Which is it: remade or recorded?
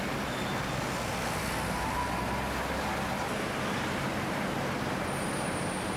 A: recorded